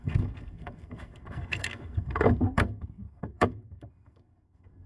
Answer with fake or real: fake